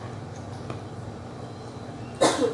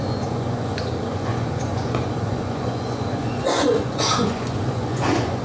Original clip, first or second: first